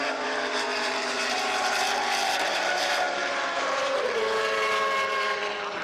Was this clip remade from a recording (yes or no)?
yes